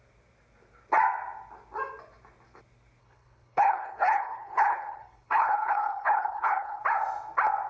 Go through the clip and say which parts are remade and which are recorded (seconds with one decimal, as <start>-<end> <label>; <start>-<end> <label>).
0.0-3.0 recorded; 3.0-6.8 remade; 6.8-7.7 recorded